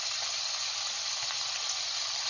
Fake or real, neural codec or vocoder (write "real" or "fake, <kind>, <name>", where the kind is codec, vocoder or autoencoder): real